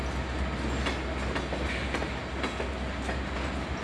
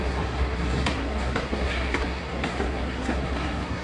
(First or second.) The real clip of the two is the first